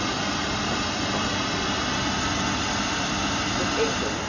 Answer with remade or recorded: recorded